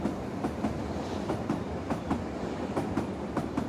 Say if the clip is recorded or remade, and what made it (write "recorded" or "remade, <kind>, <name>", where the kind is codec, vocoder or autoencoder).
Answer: remade, vocoder, BigVGAN v2